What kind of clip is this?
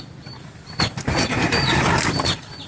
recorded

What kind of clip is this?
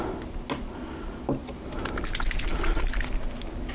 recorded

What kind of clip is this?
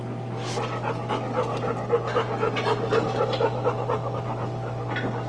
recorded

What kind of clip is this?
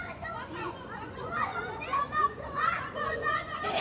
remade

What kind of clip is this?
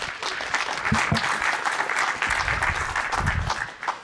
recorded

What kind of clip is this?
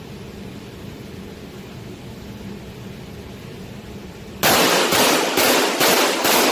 remade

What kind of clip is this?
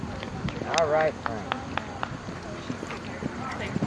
recorded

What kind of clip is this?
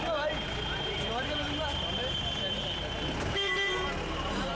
recorded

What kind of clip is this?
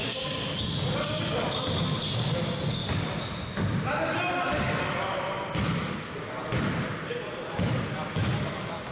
recorded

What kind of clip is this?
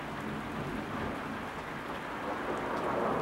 recorded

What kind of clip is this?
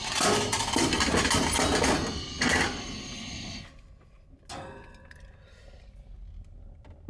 recorded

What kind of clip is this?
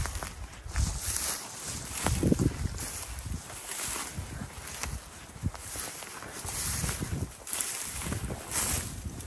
recorded